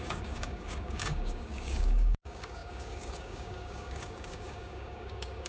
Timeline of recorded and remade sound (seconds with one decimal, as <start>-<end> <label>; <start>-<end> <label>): 0.0-5.5 remade